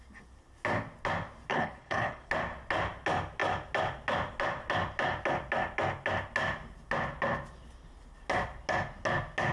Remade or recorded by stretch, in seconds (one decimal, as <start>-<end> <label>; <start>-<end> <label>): 0.0-1.5 recorded; 1.5-2.3 remade; 2.3-9.5 recorded